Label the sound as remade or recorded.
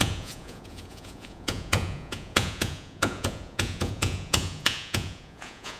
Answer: remade